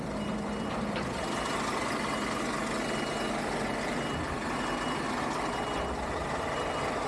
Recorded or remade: recorded